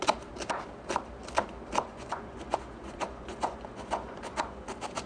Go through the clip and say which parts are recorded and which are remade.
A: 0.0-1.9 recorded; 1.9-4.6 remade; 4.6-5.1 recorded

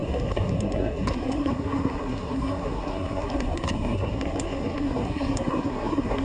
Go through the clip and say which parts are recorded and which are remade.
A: 0.0-6.2 remade

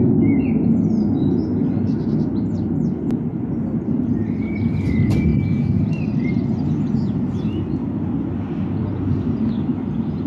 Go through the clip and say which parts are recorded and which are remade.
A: 0.0-5.3 recorded; 5.3-7.4 remade; 7.4-9.7 recorded; 9.7-10.3 remade

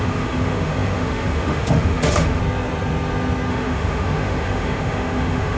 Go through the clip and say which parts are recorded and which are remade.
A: 0.0-2.4 remade; 2.4-3.5 recorded; 3.5-5.6 remade

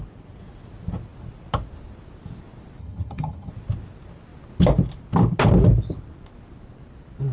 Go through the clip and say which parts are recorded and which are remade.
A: 0.0-2.8 recorded; 2.8-3.5 remade; 3.5-7.3 recorded

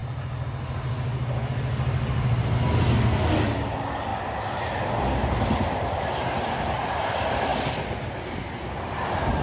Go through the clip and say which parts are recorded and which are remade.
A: 0.0-9.4 recorded

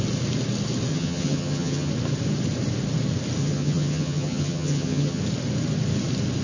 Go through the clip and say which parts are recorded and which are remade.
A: 0.0-0.9 recorded; 0.9-1.9 remade; 1.9-3.4 recorded; 3.4-5.2 remade; 5.2-6.4 recorded